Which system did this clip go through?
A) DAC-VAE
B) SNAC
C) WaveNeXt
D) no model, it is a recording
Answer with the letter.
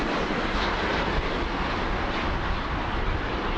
D